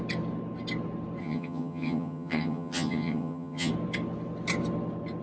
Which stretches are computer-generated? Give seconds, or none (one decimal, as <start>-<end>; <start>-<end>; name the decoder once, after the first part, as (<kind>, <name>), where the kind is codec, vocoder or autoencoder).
1.2-3.7 (vocoder, HiFi-GAN)

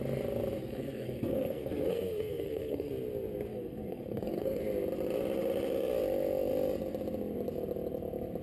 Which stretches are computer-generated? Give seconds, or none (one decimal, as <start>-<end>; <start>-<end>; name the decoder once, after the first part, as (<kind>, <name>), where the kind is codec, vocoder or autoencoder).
0.6-2.9 (codec, SNAC); 3.5-4.6

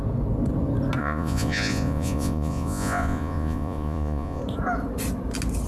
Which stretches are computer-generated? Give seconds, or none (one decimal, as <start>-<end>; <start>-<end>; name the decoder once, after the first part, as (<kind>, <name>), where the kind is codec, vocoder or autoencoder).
1.0-4.4 (vocoder, Vocos)

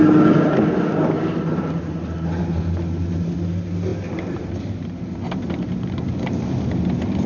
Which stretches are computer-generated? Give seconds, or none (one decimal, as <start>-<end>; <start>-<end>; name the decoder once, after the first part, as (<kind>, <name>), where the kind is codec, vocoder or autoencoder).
none

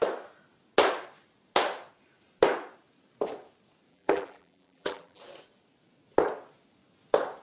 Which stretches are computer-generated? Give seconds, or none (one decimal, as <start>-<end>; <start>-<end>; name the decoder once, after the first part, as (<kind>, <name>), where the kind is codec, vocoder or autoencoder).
3.9-5.2 (vocoder, BigVGAN v2)